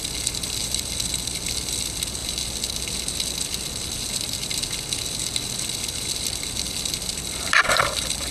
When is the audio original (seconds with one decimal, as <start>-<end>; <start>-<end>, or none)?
2.2-5.6